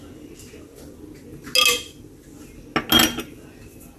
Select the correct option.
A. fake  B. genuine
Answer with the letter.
B